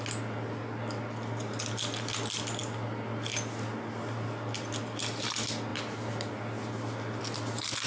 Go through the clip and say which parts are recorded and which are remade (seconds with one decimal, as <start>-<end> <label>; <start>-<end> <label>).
0.0-7.9 recorded